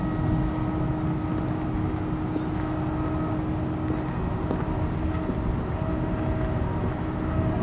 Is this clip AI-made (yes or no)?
no